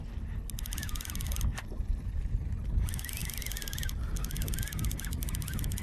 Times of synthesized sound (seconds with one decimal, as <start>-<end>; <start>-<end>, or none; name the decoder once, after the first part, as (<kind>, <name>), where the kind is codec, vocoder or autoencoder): none